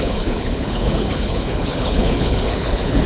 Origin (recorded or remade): remade